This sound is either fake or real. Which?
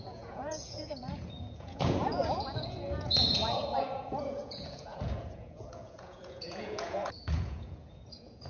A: fake